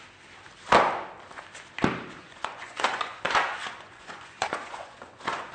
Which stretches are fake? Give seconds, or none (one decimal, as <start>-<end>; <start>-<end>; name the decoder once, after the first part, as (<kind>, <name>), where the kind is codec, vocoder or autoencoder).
2.2-5.5 (vocoder, Vocos)

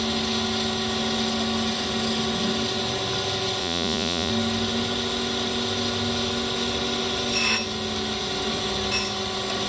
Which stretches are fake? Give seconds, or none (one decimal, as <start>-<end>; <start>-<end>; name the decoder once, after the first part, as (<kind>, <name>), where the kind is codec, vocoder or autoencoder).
3.6-4.3 (vocoder, Vocos)